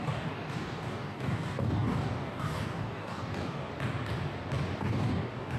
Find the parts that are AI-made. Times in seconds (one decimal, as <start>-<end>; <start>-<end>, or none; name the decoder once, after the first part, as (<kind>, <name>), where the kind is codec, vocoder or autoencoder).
0.0-3.7 (codec, DAC); 4.8-5.6